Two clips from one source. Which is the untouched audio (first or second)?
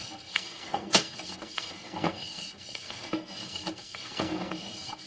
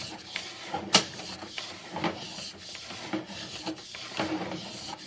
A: second